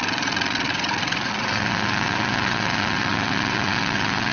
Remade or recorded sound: remade